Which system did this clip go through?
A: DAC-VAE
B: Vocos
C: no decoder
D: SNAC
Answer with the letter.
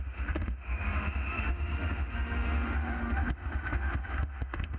A